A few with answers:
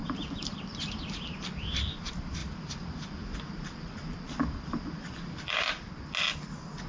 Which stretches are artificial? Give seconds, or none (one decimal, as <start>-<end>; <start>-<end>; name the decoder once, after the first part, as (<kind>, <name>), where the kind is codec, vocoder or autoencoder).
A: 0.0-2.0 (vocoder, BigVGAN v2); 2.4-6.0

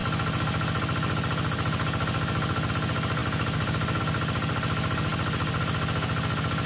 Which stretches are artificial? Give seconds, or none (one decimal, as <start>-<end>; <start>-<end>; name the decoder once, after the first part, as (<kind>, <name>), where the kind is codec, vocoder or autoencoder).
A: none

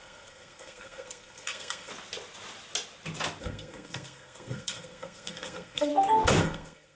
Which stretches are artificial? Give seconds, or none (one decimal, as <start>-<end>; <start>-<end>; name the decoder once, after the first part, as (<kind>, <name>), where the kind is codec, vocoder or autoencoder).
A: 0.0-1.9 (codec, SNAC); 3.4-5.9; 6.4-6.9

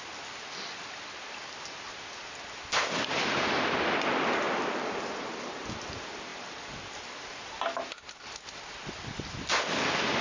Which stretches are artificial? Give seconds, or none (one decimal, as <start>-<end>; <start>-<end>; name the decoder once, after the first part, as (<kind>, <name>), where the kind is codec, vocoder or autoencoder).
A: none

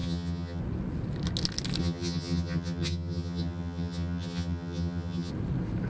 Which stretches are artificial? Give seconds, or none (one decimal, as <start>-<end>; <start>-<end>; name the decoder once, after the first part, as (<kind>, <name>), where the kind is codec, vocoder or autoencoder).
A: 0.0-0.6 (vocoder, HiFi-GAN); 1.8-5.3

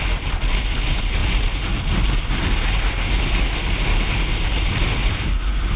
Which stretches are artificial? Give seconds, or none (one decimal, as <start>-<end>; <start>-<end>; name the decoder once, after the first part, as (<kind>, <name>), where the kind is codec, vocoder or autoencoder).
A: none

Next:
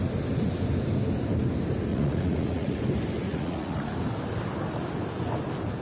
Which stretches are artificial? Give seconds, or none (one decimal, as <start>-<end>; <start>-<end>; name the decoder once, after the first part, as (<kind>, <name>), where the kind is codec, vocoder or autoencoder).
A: 1.9-2.8 (vocoder, Vocos); 3.3-3.9

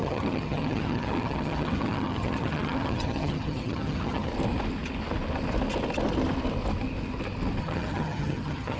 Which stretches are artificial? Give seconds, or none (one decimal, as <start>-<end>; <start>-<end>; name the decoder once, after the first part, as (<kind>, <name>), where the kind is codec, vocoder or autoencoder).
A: 0.0-4.3 (vocoder, HiFi-GAN); 7.6-8.8